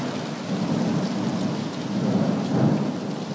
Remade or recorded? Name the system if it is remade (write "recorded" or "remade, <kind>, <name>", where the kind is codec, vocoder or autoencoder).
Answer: recorded